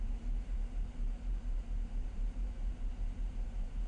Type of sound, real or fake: fake